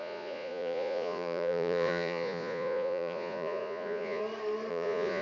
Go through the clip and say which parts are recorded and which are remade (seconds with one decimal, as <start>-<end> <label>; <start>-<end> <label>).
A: 0.0-4.2 remade; 4.2-4.7 recorded; 4.7-5.2 remade